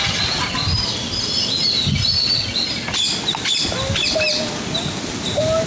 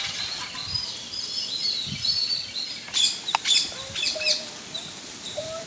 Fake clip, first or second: second